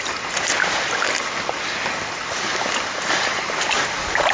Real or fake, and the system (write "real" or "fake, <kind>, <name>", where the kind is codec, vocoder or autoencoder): real